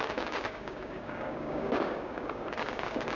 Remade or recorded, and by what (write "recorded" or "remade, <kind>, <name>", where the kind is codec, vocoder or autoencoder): remade, codec, DAC